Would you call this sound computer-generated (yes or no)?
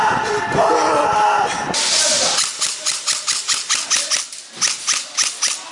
no